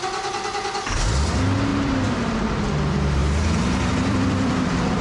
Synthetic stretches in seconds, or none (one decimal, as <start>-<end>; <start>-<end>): 1.7-2.7; 3.2-5.0